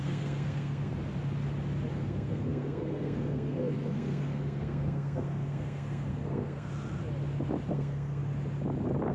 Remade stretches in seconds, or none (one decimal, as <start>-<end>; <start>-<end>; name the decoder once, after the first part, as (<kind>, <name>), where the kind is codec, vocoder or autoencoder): 0.0-0.9 (codec, SNAC); 1.9-6.7; 7.7-8.2